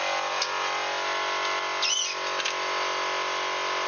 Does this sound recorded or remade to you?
recorded